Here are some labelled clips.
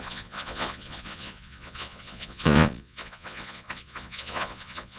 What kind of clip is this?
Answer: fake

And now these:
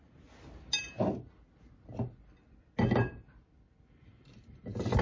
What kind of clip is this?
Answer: real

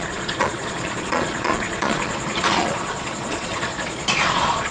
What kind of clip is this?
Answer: fake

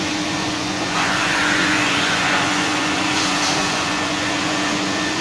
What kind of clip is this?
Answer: fake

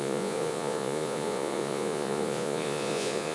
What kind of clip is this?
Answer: fake